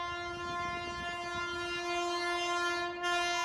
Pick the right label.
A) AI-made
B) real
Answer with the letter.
B